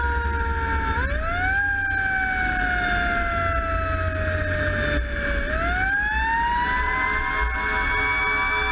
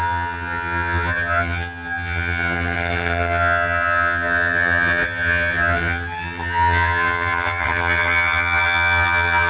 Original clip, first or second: first